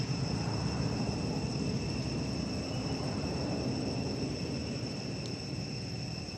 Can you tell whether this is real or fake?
fake